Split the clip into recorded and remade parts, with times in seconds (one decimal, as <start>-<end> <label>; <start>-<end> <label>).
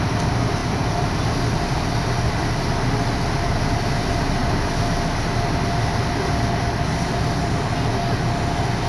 0.0-0.6 recorded; 0.6-1.6 remade; 1.6-8.9 recorded